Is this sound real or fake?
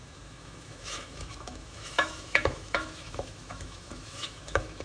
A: fake